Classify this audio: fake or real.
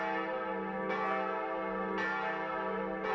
real